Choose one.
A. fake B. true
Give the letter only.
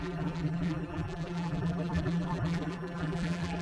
A